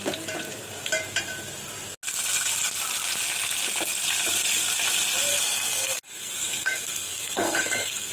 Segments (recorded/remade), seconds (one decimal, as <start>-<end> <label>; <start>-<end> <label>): 0.0-5.3 recorded; 5.3-8.1 remade